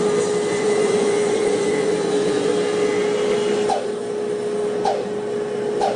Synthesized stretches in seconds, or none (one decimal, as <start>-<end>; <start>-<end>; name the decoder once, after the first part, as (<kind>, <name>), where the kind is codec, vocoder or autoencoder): 0.5-2.5 (vocoder, Vocos)